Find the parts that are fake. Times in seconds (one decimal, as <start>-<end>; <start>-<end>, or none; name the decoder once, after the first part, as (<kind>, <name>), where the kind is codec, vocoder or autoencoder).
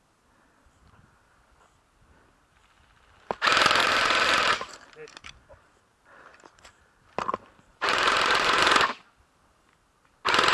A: 3.8-6.8 (vocoder, BigVGAN v2); 7.7-8.6